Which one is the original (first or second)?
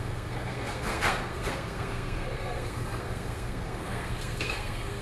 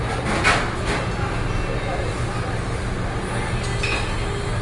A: second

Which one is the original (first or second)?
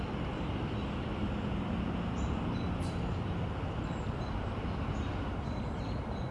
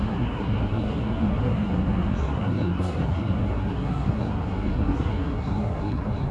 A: first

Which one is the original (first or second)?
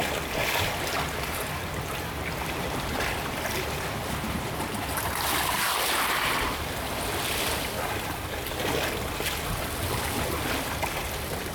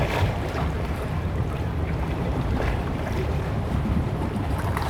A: first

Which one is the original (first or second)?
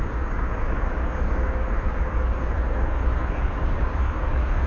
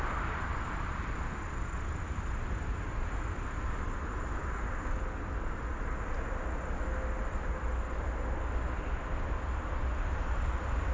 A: second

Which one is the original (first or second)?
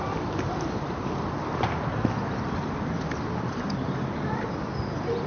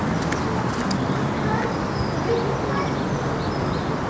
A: second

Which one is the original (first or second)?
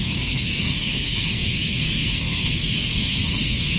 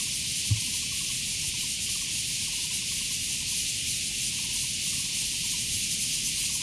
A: second